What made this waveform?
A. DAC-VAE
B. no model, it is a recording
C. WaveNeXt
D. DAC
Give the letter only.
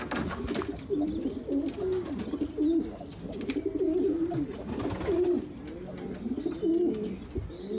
B